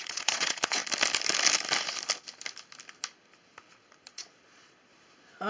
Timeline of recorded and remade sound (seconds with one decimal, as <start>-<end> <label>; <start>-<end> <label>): 0.0-0.8 remade; 0.8-3.9 recorded; 3.9-4.9 remade; 4.9-5.5 recorded